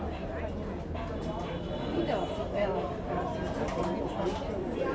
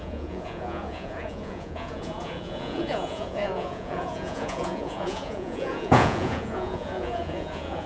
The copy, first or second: second